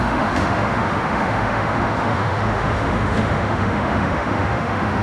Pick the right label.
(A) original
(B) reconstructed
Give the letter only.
B